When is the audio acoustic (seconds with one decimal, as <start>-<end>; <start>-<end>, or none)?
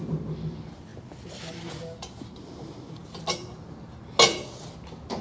0.0-5.2